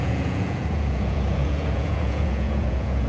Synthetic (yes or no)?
yes